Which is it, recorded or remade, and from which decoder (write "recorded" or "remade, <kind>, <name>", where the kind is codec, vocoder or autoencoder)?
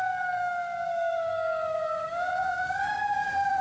remade, codec, DAC